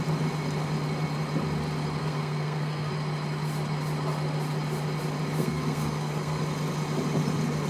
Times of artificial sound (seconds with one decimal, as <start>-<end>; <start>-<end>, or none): 2.0-2.9; 5.4-6.4